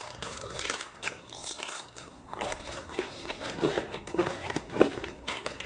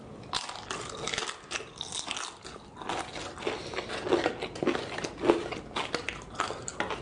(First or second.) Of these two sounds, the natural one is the second